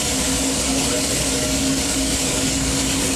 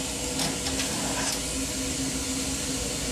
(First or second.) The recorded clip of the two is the second